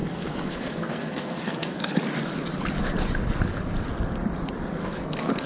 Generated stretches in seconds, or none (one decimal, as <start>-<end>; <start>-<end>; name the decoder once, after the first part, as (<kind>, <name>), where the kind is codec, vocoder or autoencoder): 0.0-1.9 (codec, SNAC); 4.7-5.5